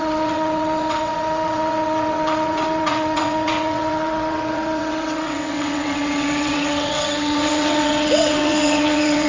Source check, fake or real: fake